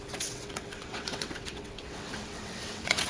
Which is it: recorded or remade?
remade